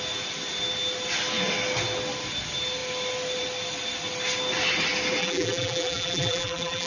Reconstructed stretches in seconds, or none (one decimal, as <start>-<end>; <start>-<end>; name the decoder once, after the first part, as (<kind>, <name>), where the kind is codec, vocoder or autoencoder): 5.2-6.9 (vocoder, BigVGAN v2)